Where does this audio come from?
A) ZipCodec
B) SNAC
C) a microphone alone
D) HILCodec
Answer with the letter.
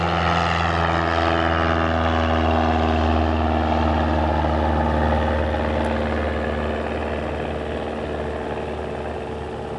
C